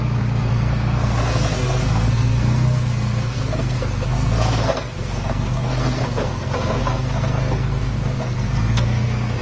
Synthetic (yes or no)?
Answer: yes